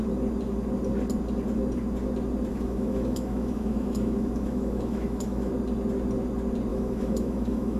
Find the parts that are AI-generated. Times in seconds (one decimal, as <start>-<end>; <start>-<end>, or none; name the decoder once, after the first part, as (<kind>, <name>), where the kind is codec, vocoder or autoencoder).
2.5-5.5 (autoencoder, DAC-VAE); 6.7-7.8